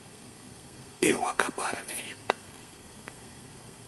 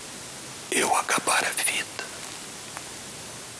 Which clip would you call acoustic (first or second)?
second